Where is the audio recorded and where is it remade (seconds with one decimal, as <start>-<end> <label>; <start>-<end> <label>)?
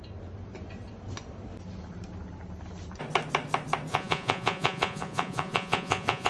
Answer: 0.0-3.9 recorded; 3.9-6.3 remade